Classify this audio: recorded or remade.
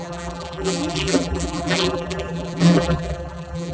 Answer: remade